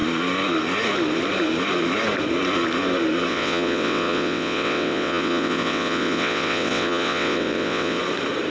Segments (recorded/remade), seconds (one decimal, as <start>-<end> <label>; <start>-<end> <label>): 0.0-3.3 recorded; 3.3-8.0 remade; 8.0-8.5 recorded